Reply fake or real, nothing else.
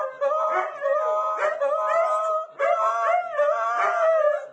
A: real